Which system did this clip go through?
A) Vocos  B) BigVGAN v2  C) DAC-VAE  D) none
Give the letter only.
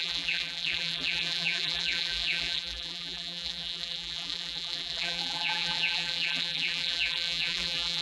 B